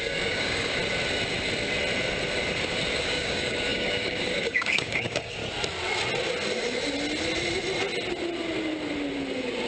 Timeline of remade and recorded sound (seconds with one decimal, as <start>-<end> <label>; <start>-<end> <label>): 0.0-0.8 remade; 0.8-3.0 recorded; 3.0-5.4 remade; 5.4-9.7 recorded